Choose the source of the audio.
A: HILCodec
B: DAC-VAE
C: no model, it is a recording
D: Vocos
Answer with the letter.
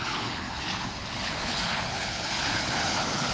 A